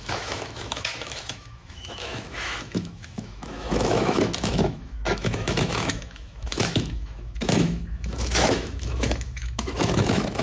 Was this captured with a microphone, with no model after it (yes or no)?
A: no